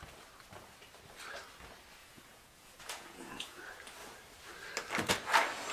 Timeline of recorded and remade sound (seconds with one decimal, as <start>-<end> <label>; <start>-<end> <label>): 0.0-2.0 recorded; 2.0-3.6 remade; 3.6-5.7 recorded